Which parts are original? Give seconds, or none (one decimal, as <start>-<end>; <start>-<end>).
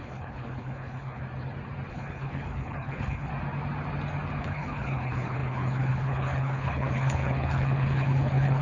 1.2-1.9; 3.3-4.4